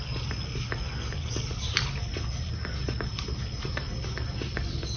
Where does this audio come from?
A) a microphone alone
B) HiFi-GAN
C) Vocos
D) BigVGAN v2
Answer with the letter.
A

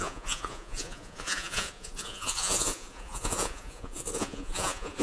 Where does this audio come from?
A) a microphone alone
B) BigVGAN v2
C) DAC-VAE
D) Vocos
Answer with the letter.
D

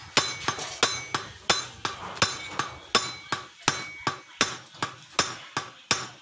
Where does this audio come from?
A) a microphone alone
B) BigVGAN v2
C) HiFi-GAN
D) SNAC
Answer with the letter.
A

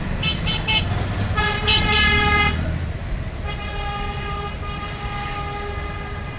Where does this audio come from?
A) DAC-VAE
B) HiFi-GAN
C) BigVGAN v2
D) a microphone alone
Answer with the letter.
D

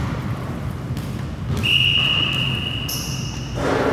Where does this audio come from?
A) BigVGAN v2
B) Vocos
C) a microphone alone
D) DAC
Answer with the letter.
C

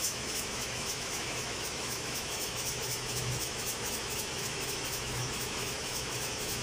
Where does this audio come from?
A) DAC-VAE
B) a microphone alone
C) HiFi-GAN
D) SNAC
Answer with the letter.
A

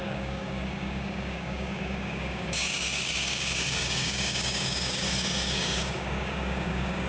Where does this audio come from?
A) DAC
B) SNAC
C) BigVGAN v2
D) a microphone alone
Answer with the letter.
A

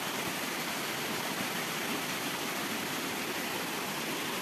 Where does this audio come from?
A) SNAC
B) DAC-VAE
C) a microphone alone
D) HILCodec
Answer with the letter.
C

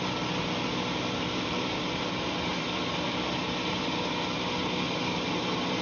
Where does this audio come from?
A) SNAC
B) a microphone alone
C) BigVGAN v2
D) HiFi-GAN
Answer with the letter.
B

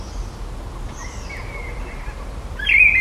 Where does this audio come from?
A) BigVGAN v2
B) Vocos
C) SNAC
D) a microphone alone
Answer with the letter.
D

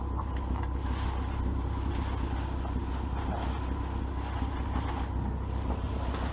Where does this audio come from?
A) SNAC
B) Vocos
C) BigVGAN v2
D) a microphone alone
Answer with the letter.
D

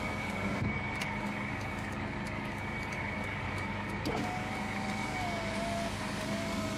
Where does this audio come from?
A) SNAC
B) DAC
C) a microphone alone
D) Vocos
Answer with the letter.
B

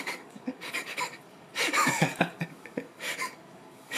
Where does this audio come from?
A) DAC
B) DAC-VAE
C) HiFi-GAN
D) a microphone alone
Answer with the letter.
A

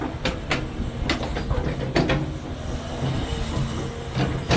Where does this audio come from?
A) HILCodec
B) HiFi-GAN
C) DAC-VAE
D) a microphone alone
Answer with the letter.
D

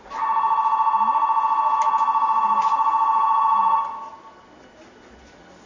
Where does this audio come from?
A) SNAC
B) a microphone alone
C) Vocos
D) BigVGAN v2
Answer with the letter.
B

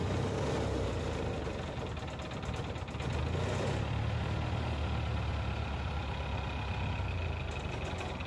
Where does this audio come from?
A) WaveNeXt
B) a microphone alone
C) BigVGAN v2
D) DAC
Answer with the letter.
B